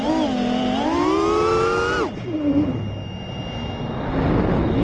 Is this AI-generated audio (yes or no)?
no